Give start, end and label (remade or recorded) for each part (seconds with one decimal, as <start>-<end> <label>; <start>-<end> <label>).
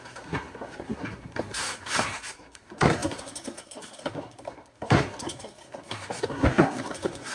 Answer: 0.0-7.3 remade